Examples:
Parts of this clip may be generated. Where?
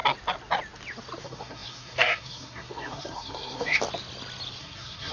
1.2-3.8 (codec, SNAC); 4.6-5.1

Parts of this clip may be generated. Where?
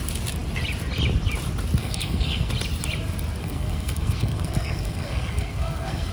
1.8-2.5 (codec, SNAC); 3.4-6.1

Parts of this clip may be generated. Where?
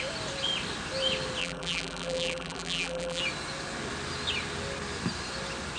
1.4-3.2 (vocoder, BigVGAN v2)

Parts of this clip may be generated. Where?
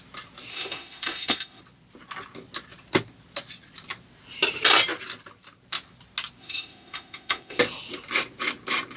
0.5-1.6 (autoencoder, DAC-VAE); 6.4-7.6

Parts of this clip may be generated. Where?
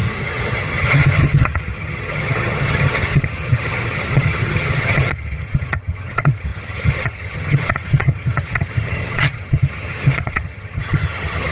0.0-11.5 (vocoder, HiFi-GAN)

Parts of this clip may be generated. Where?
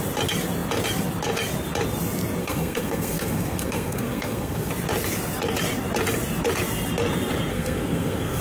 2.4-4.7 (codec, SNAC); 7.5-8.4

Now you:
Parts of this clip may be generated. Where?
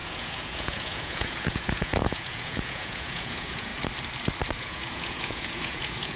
0.0-3.7 (vocoder, Vocos); 4.6-6.2